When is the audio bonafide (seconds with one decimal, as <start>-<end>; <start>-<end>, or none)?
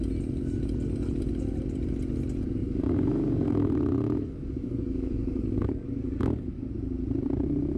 0.0-2.6; 6.7-7.8